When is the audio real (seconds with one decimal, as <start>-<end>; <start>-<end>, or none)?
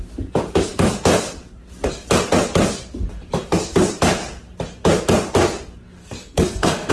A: 0.0-6.0